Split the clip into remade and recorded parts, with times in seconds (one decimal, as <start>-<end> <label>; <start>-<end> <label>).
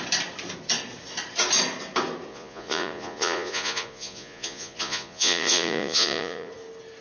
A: 0.0-2.3 recorded; 2.3-6.5 remade; 6.5-7.0 recorded